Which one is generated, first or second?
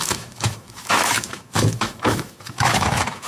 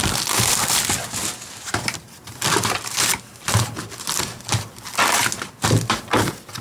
first